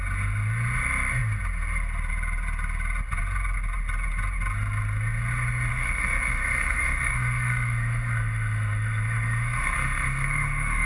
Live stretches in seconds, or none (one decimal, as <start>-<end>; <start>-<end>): 0.0-5.7